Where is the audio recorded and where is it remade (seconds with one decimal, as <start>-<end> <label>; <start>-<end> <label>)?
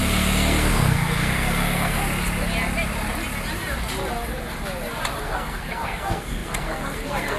0.0-2.0 remade; 2.0-5.2 recorded; 5.2-7.4 remade